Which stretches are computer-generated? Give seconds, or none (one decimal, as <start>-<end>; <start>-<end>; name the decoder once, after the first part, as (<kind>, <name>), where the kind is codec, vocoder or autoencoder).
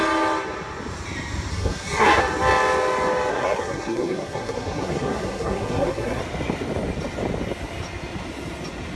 1.5-2.2 (codec, SNAC); 3.3-6.2